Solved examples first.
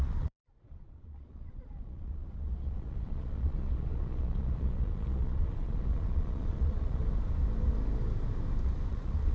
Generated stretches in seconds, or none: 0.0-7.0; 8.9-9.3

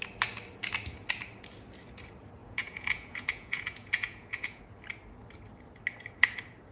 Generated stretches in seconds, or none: 2.4-4.6

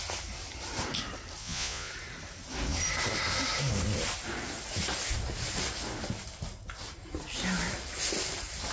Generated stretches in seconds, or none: 1.4-1.9

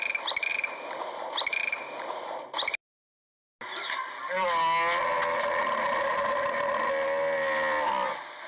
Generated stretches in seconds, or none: none

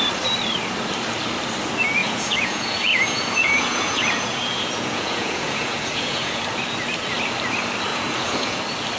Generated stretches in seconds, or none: 2.0-6.4; 7.9-8.6

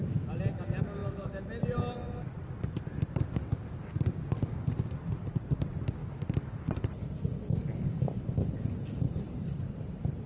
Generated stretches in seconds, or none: none